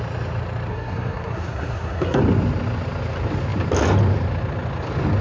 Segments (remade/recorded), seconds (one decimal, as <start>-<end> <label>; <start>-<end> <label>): 0.0-0.7 recorded; 0.7-2.2 remade; 2.2-5.2 recorded